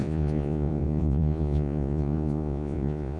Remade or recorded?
remade